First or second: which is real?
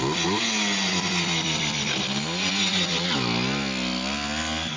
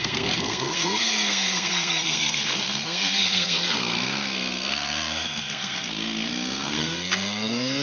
first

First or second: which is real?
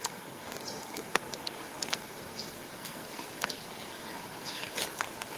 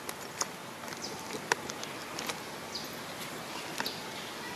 second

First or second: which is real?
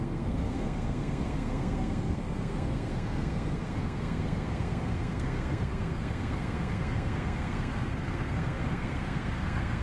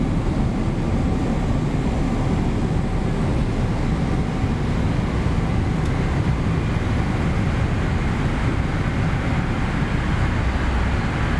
second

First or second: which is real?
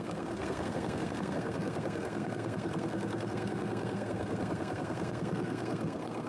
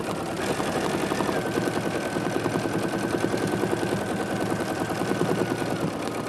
second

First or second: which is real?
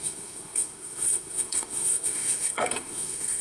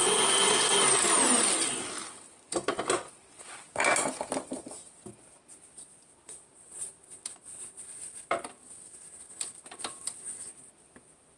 second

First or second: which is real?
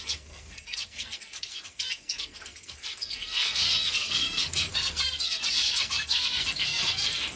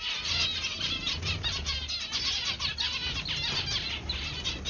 second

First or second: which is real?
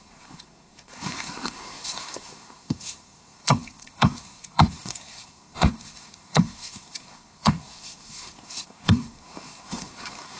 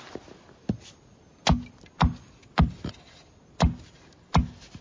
second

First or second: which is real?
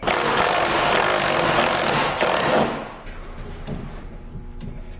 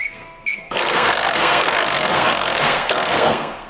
first